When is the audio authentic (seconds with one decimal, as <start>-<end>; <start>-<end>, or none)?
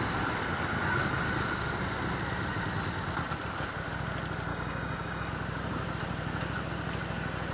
0.0-4.5; 5.3-7.5